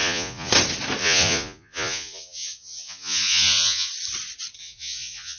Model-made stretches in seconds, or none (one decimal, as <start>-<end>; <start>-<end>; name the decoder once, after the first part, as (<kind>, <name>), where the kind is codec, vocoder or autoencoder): 0.0-0.5 (vocoder, Vocos); 1.0-3.9; 4.6-5.4